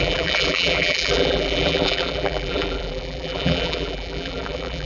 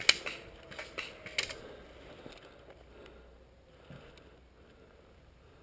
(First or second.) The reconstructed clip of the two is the first